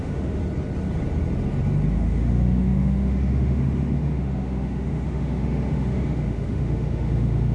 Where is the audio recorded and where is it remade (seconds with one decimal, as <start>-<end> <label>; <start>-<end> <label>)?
0.0-0.4 remade; 0.4-1.9 recorded; 1.9-7.5 remade